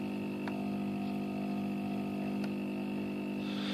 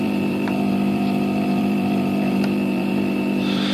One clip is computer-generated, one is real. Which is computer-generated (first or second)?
second